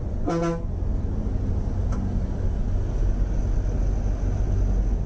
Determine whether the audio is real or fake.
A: real